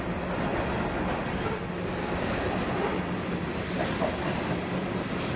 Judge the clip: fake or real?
real